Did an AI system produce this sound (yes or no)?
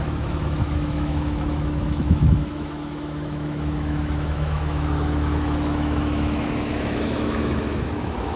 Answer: yes